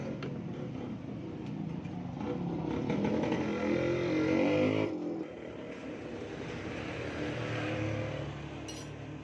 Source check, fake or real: real